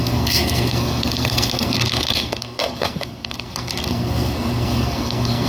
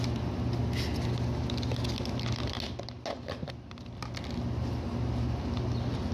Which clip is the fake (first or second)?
first